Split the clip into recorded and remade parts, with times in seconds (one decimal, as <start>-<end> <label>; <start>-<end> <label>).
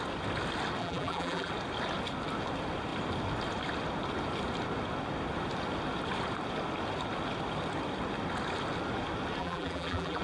0.0-0.8 recorded; 0.8-1.5 remade; 1.5-9.4 recorded; 9.4-10.2 remade